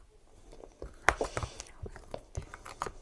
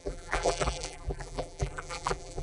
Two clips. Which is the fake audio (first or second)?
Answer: second